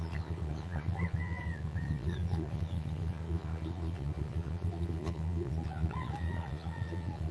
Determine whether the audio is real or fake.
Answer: fake